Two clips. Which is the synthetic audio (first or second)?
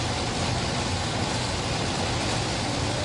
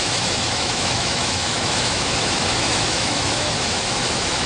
second